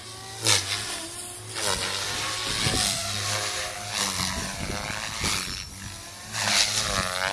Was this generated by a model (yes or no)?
no